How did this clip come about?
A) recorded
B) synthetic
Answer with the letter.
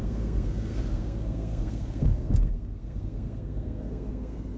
B